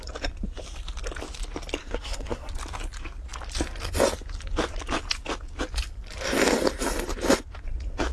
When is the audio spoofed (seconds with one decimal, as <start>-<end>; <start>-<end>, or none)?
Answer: 1.8-2.5